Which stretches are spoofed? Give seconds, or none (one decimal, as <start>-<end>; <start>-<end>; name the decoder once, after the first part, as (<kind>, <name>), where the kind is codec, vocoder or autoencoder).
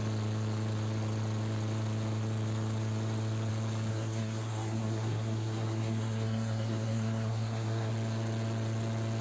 3.9-7.9 (codec, SNAC)